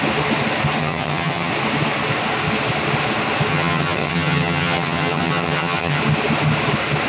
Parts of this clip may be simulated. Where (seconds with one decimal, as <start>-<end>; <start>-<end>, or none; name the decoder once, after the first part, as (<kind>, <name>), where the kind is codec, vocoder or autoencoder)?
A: 0.8-1.5 (vocoder, HiFi-GAN); 3.5-6.0